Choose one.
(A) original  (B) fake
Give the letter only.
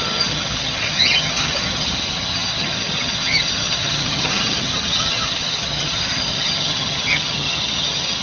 B